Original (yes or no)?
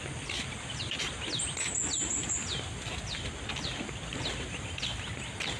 yes